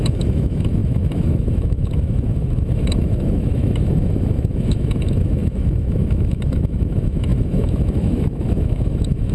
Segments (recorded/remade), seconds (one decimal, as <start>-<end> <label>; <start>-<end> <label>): 0.0-9.3 remade